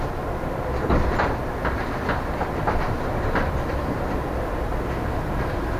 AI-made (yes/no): no